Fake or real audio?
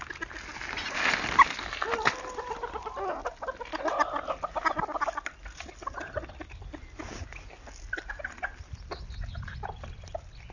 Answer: real